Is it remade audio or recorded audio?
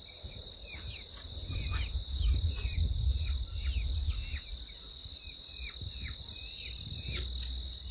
recorded